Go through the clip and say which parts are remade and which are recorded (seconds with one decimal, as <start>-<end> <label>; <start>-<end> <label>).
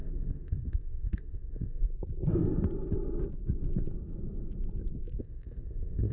0.0-1.9 remade; 1.9-5.2 recorded; 5.2-6.1 remade